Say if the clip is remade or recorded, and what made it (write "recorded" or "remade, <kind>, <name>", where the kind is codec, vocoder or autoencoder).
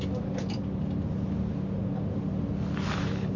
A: recorded